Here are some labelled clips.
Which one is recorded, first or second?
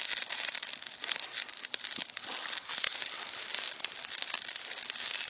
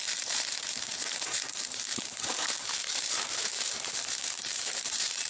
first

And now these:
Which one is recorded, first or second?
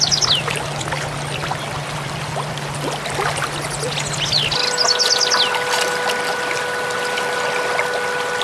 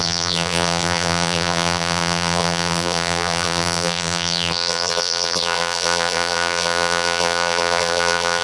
first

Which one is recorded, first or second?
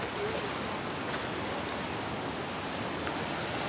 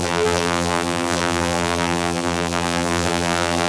first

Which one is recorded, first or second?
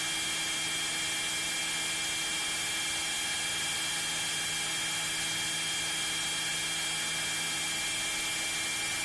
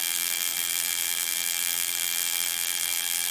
first